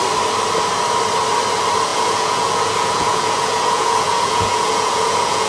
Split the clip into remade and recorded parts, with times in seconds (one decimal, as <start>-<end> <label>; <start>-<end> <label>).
0.0-1.9 recorded; 1.9-5.5 remade